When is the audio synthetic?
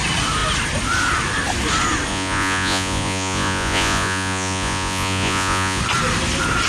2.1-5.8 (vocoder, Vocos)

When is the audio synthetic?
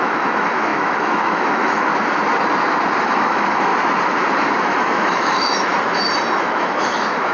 0.0-1.9 (autoencoder, DAC-VAE); 3.0-3.7; 4.6-5.7; 6.4-7.3